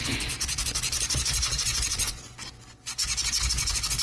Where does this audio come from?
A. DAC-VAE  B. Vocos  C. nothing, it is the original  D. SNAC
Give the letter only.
B